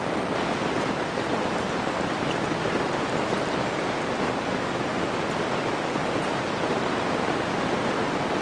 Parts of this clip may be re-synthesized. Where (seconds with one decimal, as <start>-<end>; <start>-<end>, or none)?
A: none